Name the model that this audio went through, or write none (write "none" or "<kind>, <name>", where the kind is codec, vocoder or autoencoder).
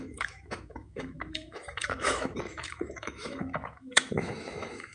autoencoder, DAC-VAE